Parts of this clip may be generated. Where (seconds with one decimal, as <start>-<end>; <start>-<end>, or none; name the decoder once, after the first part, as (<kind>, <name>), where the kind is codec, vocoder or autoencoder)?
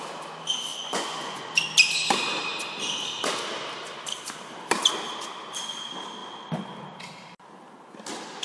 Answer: 0.7-1.4 (vocoder, Vocos)